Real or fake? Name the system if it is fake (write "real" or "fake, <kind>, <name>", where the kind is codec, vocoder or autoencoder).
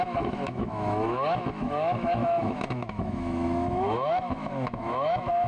fake, autoencoder, DAC-VAE